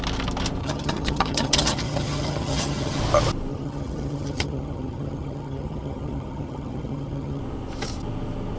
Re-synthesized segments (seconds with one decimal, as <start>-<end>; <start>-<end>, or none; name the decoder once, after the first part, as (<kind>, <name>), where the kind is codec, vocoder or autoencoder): 0.6-3.0 (vocoder, HiFi-GAN); 3.5-7.4